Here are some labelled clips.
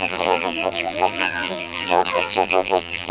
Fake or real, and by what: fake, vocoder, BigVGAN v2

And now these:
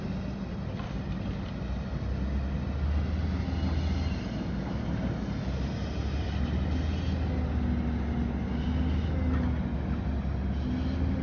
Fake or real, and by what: real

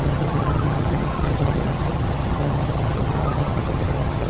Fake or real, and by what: fake, vocoder, HiFi-GAN